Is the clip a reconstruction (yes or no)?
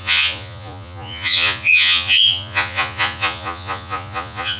yes